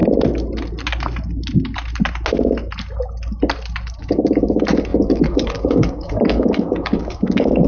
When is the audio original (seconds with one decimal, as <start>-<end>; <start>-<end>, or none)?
0.0-4.0